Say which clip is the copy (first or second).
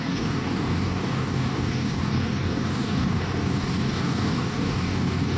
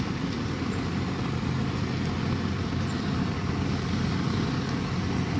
first